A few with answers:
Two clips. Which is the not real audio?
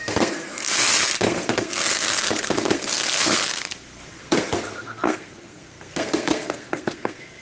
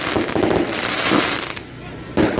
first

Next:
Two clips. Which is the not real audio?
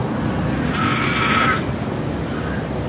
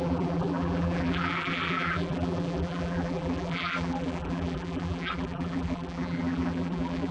second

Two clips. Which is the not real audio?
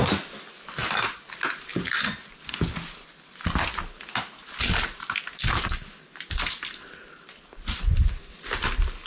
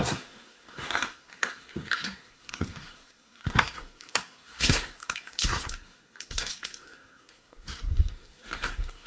second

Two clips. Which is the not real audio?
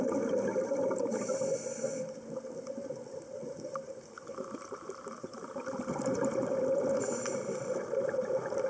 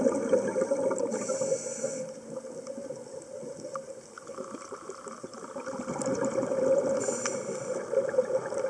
first